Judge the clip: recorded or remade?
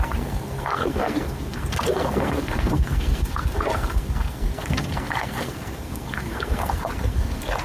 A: remade